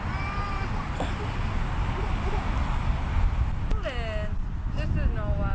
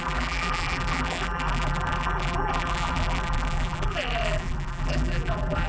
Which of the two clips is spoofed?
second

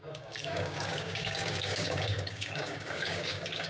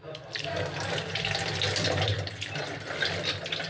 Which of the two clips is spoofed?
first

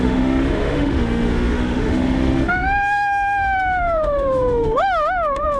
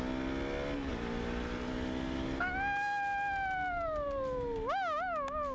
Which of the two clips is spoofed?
first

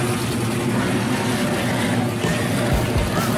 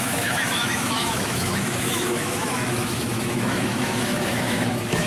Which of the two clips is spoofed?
second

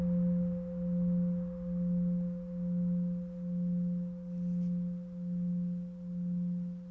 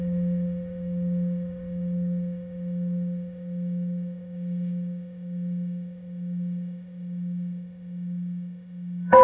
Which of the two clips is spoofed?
second